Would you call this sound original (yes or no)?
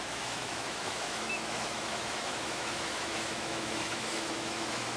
no